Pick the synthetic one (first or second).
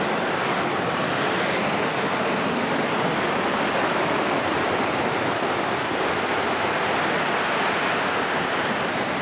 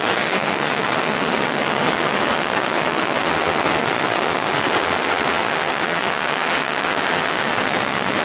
second